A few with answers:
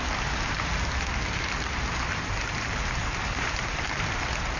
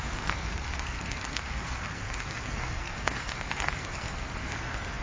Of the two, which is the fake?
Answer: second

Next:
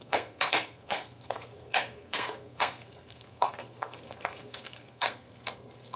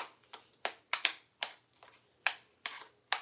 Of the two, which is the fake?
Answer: first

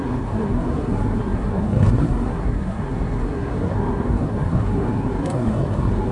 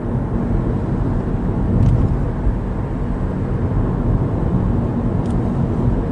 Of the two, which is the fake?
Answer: first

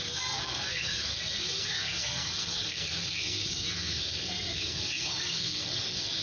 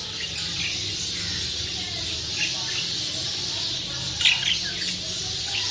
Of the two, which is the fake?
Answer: first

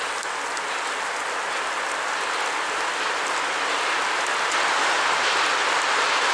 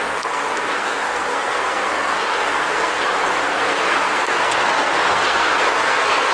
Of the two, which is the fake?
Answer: second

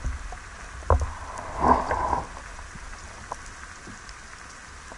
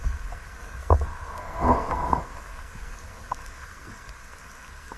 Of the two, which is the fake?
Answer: second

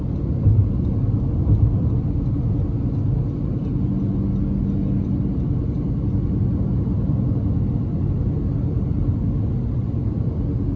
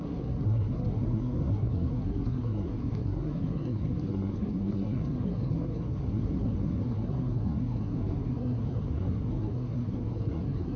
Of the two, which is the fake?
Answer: second